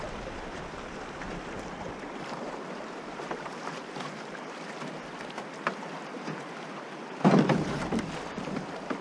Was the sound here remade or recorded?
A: recorded